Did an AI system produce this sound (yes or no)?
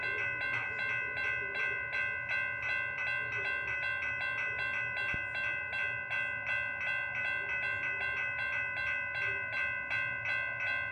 no